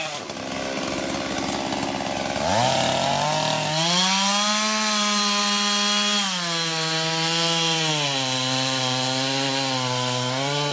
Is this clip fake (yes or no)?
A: no